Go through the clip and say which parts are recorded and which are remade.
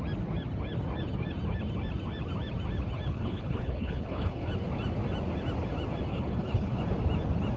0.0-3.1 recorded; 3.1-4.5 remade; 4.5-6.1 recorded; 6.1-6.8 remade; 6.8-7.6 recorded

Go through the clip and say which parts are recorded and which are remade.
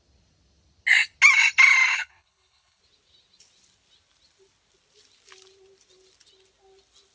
0.0-1.9 recorded; 1.9-2.8 remade; 2.8-7.1 recorded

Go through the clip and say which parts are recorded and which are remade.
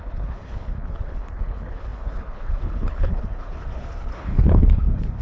0.0-5.2 remade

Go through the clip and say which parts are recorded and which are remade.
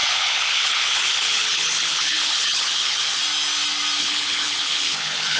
0.0-3.2 remade; 3.2-4.0 recorded; 4.0-5.4 remade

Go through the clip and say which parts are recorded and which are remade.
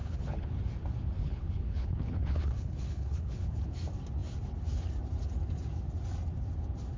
0.0-0.6 remade; 0.6-1.2 recorded; 1.2-3.7 remade; 3.7-7.0 recorded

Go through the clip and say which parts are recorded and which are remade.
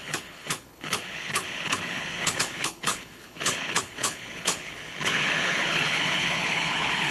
0.0-7.1 remade